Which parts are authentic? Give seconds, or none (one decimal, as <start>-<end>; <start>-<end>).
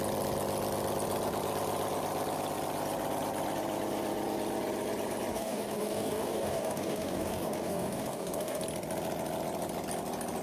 0.0-5.3; 8.6-10.4